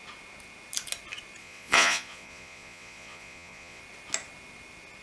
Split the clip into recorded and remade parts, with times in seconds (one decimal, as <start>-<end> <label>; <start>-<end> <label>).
0.0-1.4 recorded; 1.4-3.8 remade; 3.8-5.0 recorded